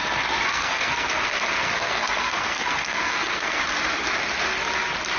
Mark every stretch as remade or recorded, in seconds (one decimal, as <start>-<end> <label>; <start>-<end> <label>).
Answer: 0.0-0.5 recorded; 0.5-3.6 remade; 3.6-5.2 recorded